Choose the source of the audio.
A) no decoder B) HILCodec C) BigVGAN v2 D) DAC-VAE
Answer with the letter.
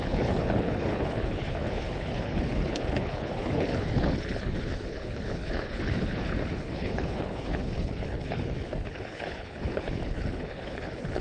B